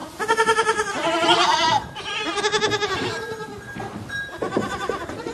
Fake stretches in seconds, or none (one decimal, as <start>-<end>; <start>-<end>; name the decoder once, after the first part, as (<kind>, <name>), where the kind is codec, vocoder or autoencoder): 0.0-2.4 (vocoder, BigVGAN v2)